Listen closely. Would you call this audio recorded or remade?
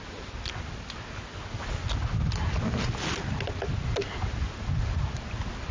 recorded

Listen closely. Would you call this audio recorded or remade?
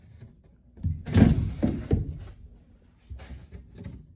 recorded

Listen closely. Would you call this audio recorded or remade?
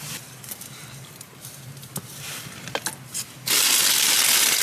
recorded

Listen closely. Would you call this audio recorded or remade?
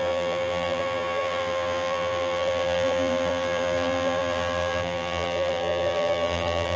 remade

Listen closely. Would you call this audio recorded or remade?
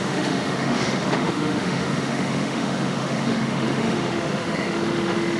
remade